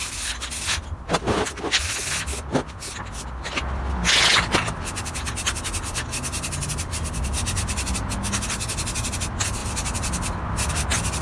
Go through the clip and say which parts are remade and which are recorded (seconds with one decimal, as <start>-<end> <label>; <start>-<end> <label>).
0.0-11.2 recorded